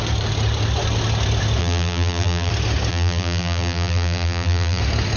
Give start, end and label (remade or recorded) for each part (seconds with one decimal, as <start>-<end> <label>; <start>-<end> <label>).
0.0-1.6 recorded; 1.6-2.5 remade; 2.5-2.9 recorded; 2.9-4.8 remade; 4.8-5.2 recorded